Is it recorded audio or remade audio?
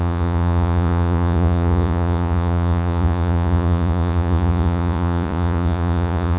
remade